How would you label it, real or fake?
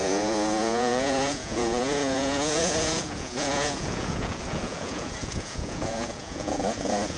fake